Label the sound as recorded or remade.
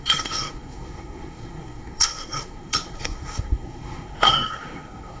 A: remade